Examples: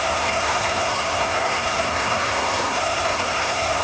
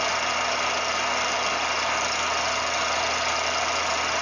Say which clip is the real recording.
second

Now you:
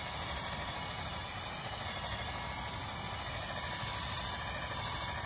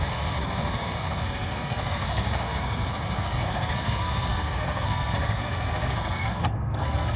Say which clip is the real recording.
first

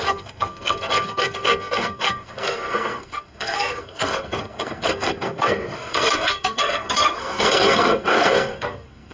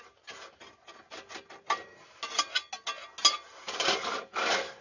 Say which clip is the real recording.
second